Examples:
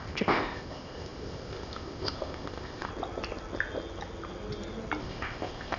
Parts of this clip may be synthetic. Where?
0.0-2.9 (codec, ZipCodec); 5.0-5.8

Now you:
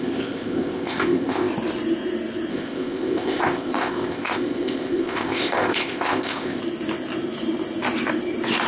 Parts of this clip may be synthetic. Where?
0.0-1.5 (codec, ZipCodec); 2.5-6.6